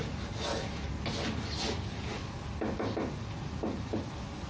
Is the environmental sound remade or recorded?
recorded